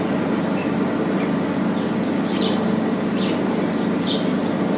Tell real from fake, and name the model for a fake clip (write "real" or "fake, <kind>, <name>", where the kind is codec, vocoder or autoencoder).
real